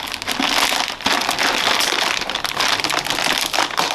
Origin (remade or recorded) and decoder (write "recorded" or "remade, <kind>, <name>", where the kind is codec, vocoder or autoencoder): recorded